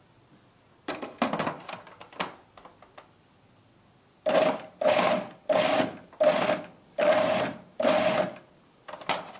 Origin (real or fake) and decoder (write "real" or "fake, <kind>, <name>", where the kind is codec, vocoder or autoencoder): real